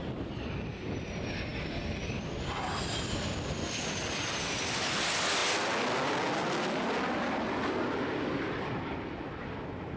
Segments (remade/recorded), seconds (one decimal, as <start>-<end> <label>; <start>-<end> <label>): 0.0-10.0 recorded